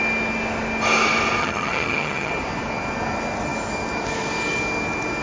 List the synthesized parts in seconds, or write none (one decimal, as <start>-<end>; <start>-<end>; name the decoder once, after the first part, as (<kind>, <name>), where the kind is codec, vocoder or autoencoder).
1.4-2.3 (vocoder, HiFi-GAN)